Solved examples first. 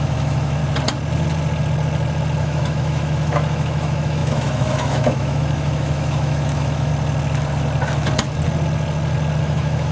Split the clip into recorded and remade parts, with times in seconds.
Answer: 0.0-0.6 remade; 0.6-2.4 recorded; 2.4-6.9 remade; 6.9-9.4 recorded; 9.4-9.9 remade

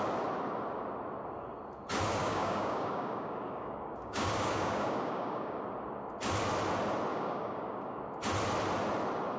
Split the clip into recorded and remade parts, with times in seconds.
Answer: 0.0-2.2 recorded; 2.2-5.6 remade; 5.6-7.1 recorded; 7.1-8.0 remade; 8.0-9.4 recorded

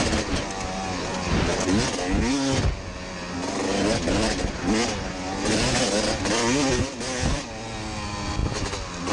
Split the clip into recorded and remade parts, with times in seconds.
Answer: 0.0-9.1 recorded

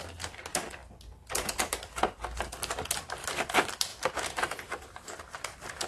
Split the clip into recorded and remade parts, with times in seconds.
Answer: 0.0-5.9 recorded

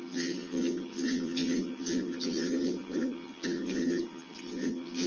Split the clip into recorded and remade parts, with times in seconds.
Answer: 0.0-5.1 remade

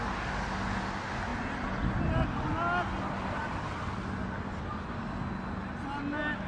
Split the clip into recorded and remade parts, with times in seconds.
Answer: 0.0-6.5 recorded